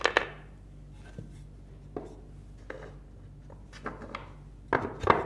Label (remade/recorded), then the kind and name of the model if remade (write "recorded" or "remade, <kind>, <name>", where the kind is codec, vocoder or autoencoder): recorded